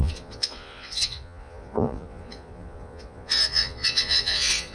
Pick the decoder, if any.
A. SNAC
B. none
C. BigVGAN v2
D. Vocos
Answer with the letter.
D